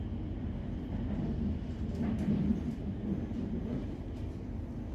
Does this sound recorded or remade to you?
recorded